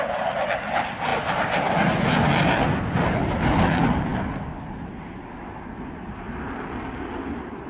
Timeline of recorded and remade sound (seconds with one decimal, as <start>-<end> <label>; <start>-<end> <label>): 0.0-7.7 recorded